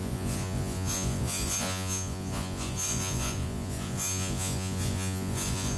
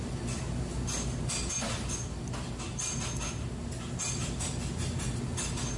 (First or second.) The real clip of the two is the second